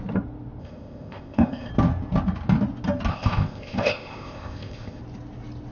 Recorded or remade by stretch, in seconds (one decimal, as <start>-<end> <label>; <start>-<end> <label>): 0.0-0.6 recorded; 0.6-1.7 remade; 1.7-3.1 recorded; 3.1-5.0 remade; 5.0-5.7 recorded